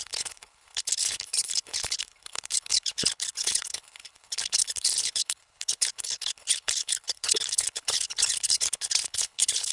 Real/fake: fake